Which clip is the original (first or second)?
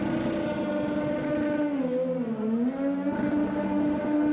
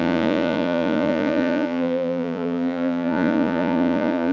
first